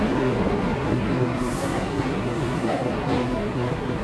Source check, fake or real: fake